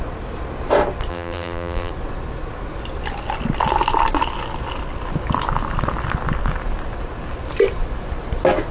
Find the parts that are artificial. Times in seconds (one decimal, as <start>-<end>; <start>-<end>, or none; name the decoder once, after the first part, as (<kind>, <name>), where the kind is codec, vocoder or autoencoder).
1.1-1.9 (vocoder, BigVGAN v2)